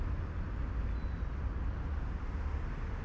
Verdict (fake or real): real